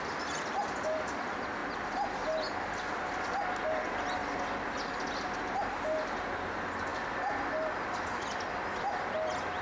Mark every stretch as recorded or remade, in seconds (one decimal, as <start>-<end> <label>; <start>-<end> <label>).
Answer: 0.0-6.9 recorded; 6.9-8.4 remade; 8.4-9.6 recorded